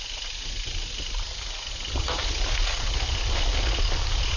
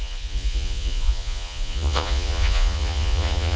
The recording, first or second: first